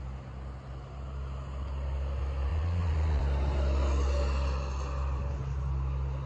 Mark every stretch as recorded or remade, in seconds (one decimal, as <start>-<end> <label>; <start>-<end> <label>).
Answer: 0.0-2.5 recorded; 2.5-3.2 remade; 3.2-6.3 recorded